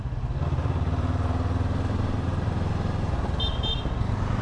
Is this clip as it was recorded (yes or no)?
yes